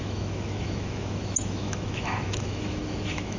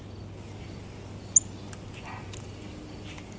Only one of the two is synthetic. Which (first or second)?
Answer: first